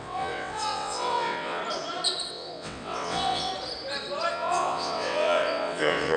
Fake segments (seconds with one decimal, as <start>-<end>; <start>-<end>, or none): 0.0-1.6; 2.3-3.5; 4.3-6.2